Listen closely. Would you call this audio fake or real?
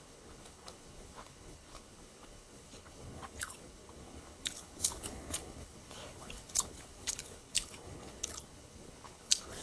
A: fake